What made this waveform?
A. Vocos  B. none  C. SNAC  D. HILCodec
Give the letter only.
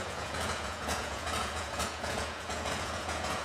A